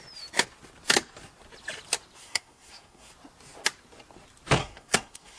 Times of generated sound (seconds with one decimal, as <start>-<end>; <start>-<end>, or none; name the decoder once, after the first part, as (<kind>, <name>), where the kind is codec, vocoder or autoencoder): 2.2-3.1 (codec, SNAC); 4.6-5.4